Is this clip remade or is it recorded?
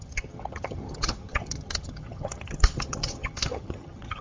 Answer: remade